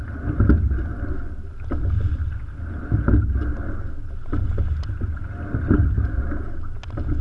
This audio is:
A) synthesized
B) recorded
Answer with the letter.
B